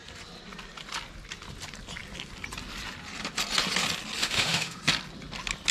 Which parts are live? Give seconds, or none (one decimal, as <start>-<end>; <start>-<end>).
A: 0.0-4.2; 4.8-5.7